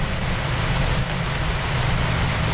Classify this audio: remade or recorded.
recorded